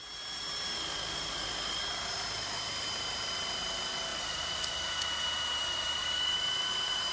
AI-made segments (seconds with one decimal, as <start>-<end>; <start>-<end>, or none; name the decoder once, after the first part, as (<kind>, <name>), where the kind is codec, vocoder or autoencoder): 0.0-0.7 (vocoder, BigVGAN v2); 4.1-4.7; 5.6-7.1